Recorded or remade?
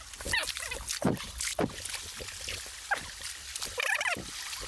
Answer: recorded